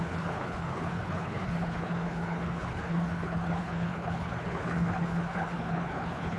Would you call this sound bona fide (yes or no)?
no